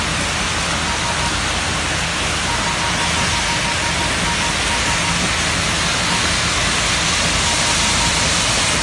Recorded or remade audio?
recorded